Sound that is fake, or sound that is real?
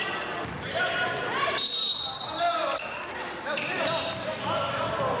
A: real